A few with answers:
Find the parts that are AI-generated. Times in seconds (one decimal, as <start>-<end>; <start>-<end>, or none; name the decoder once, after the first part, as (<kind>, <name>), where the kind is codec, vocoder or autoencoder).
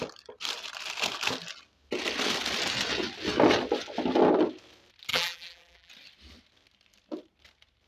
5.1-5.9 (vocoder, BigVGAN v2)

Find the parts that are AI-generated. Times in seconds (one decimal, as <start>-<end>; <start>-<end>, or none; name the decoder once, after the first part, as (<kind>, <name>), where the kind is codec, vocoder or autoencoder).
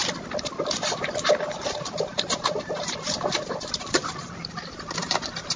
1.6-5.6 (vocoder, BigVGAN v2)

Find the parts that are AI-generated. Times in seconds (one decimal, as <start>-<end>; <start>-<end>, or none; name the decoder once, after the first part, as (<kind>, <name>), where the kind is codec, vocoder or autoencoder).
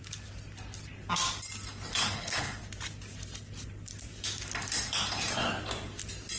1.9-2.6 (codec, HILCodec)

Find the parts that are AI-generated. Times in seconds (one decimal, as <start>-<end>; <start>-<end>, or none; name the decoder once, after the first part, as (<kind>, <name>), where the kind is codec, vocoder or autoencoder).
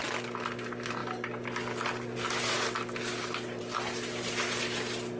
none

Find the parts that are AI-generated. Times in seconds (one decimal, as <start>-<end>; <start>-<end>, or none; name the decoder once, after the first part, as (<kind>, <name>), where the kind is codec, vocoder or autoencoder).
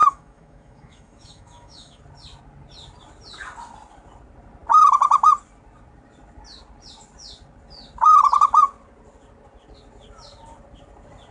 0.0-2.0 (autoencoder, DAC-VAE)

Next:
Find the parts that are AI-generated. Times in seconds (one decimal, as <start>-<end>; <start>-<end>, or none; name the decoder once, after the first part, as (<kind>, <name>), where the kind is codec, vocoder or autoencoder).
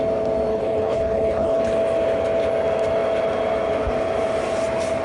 0.5-1.6 (codec, HILCodec)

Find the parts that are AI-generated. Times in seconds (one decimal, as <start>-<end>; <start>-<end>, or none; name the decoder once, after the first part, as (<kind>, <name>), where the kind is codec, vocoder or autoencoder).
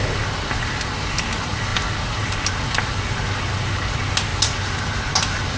none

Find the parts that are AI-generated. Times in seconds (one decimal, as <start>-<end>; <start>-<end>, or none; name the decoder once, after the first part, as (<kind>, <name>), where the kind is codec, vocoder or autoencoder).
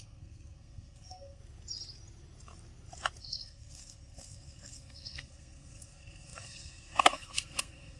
0.0-1.4 (codec, SNAC); 3.2-8.0